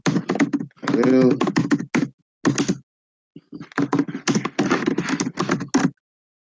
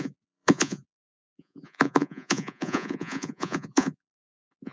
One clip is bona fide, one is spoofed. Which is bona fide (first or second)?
first